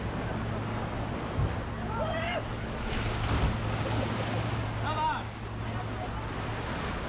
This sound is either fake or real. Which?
real